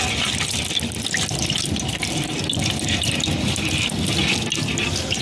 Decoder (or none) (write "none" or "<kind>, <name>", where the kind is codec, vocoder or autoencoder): none